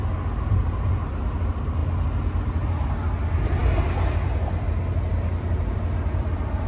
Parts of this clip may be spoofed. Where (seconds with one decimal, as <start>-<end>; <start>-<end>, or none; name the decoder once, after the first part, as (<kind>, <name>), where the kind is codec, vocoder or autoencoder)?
none